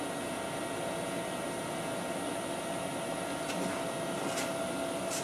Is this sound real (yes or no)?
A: yes